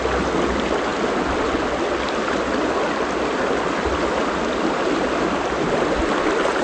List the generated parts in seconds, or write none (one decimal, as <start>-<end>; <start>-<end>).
none